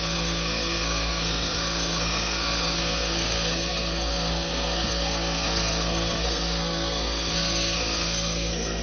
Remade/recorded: remade